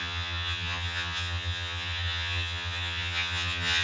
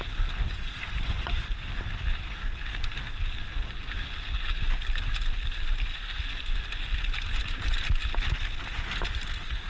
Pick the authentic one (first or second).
second